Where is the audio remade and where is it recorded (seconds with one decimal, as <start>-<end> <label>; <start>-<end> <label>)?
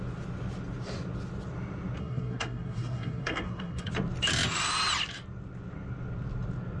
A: 0.0-2.0 recorded; 2.0-3.9 remade; 3.9-6.8 recorded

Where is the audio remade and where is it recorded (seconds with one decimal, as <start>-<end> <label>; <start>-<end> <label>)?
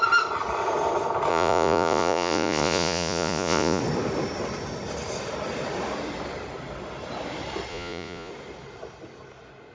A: 0.0-1.3 recorded; 1.3-3.8 remade; 3.8-7.7 recorded; 7.7-8.3 remade; 8.3-9.7 recorded